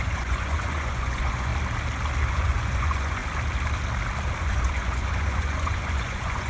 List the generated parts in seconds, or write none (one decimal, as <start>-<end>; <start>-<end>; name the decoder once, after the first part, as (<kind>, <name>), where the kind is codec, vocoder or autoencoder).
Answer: 0.0-1.5 (vocoder, Vocos); 2.3-3.2; 4.4-6.5